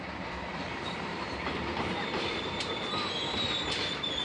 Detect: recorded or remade remade